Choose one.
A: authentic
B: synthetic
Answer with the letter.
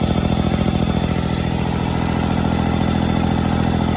A